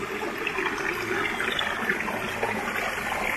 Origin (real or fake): real